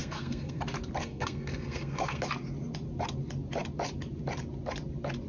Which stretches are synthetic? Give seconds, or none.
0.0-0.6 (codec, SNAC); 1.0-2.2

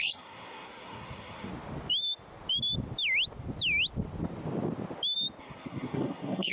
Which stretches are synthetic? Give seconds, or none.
0.0-1.5 (codec, SNAC); 5.4-6.5